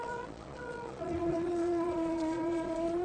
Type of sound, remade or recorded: remade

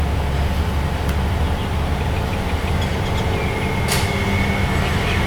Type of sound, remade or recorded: recorded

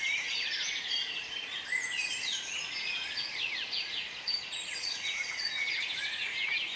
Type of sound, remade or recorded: remade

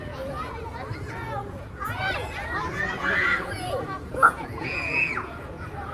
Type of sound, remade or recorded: remade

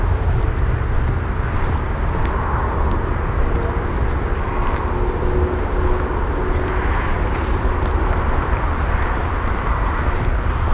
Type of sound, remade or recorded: recorded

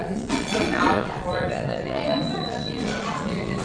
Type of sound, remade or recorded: remade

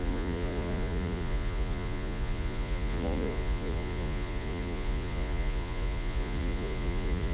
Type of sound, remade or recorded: remade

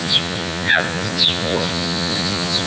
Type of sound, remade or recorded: remade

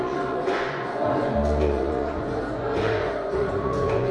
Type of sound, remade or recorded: remade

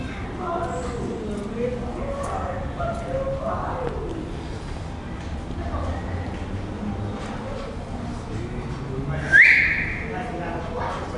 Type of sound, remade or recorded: recorded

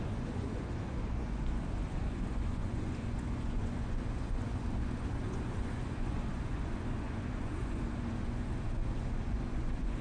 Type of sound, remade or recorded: remade